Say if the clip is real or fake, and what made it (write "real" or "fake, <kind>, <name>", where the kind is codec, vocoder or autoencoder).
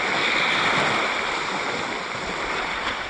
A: real